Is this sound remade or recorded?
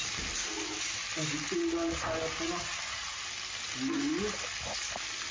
recorded